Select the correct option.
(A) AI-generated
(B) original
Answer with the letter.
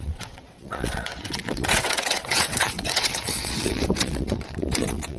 A